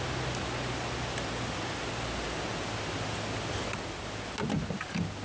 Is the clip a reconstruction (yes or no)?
no